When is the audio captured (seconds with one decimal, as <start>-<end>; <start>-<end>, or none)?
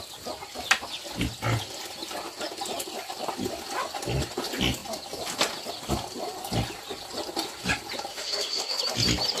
0.0-8.1; 8.8-9.4